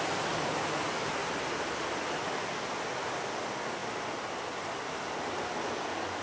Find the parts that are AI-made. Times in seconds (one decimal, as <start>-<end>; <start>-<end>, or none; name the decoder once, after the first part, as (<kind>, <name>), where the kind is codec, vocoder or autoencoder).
none